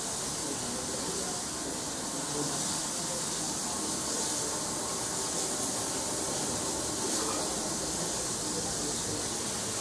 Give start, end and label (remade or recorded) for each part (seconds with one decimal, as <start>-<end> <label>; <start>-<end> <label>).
0.0-9.8 recorded